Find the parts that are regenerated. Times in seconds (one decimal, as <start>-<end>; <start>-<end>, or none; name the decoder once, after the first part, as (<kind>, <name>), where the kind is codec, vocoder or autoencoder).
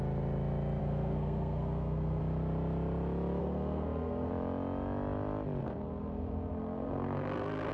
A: 0.8-2.2 (codec, SNAC); 3.4-4.3; 5.6-7.7